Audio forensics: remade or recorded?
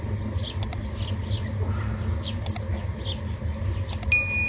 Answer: recorded